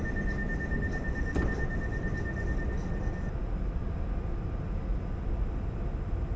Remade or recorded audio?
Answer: recorded